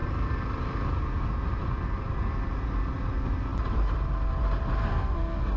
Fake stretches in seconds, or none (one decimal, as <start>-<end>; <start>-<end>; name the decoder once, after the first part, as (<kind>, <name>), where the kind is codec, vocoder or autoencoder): 4.8-5.6 (codec, SNAC)